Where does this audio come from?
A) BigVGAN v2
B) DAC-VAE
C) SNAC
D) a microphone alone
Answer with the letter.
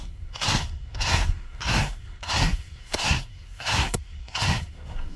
C